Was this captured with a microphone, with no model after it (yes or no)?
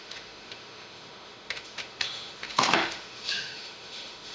no